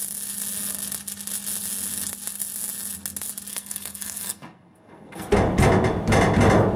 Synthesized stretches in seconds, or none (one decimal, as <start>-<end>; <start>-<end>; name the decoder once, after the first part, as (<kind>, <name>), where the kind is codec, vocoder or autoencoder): 3.5-5.3 (codec, SNAC)